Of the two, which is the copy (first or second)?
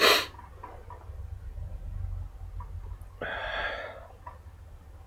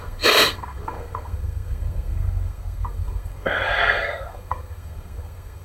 second